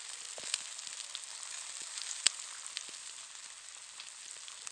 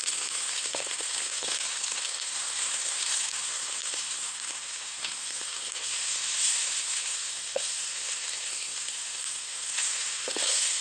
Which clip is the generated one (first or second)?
second